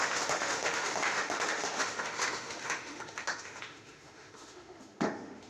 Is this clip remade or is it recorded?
remade